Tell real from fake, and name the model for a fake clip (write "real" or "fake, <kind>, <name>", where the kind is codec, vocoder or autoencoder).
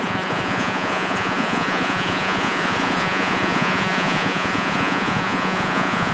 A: fake, vocoder, Vocos